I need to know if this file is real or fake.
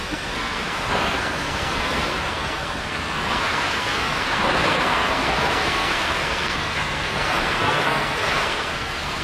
fake